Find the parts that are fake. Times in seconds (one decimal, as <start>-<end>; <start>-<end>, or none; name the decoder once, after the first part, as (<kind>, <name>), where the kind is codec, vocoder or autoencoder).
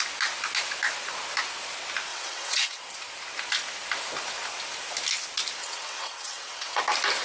2.1-2.8 (vocoder, WaveNeXt); 5.6-6.8